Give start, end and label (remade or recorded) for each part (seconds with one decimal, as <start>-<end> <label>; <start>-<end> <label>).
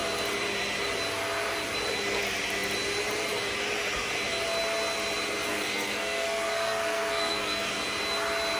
0.0-5.5 recorded; 5.5-7.7 remade; 7.7-8.6 recorded